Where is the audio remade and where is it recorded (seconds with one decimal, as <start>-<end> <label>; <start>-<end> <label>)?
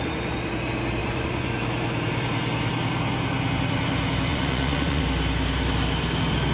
0.0-0.5 remade; 0.5-1.0 recorded; 1.0-1.6 remade; 1.6-4.3 recorded; 4.3-5.0 remade; 5.0-6.5 recorded